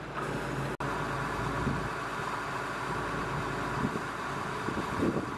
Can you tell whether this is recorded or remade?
recorded